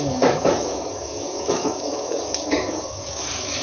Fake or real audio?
fake